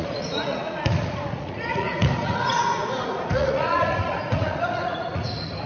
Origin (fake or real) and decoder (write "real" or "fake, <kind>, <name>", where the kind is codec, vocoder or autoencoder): fake, vocoder, Vocos